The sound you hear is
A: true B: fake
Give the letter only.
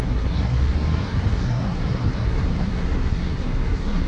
B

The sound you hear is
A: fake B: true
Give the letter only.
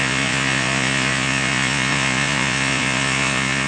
A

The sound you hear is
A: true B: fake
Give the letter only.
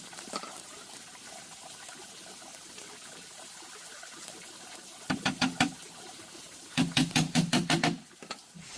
B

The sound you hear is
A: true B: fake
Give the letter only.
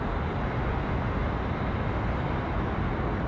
A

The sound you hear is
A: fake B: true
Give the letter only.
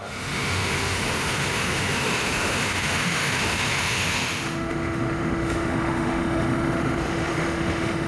A